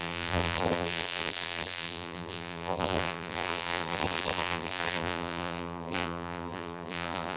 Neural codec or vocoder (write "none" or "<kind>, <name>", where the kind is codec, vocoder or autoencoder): vocoder, BigVGAN v2